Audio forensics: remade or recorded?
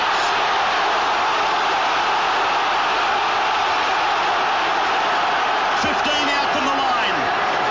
recorded